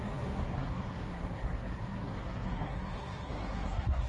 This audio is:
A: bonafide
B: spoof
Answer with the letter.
B